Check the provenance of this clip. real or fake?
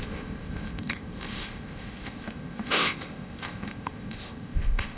fake